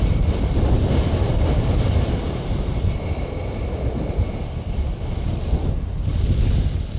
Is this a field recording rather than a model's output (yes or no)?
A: yes